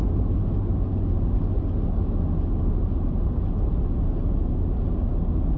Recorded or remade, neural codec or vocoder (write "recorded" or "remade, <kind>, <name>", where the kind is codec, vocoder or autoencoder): recorded